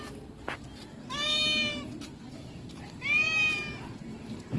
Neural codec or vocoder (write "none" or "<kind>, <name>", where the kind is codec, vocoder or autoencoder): none